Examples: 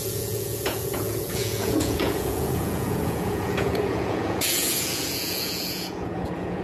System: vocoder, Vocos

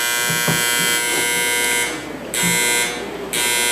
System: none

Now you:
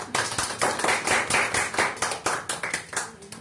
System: none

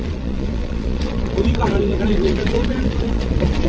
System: vocoder, Vocos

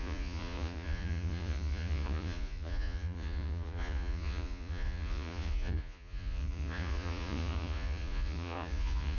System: vocoder, Vocos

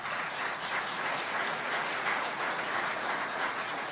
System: vocoder, Vocos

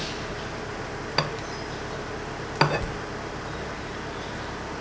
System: none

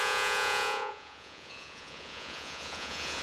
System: vocoder, Vocos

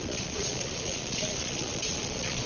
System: vocoder, Vocos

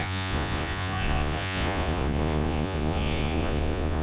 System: vocoder, Vocos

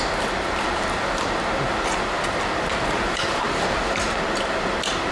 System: none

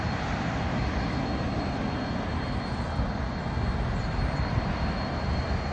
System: none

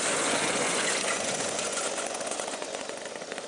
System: vocoder, Vocos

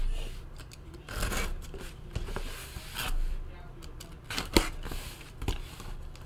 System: none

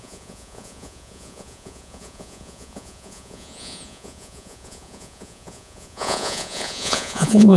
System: vocoder, Vocos